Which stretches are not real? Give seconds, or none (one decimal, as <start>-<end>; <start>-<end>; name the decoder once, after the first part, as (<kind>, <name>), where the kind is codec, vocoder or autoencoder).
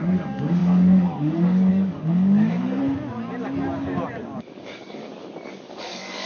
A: 0.0-2.8 (codec, DAC); 4.4-5.1; 5.7-6.3